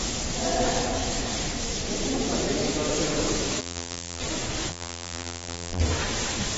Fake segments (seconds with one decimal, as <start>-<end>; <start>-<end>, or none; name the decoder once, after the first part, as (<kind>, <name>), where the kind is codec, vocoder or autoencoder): 3.6-4.2 (vocoder, BigVGAN v2); 4.7-5.8